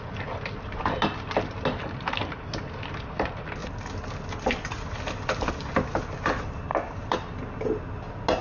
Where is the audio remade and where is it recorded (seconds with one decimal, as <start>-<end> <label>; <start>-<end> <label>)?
0.0-3.6 recorded; 3.6-5.5 remade; 5.5-6.7 recorded; 6.7-7.4 remade; 7.4-8.4 recorded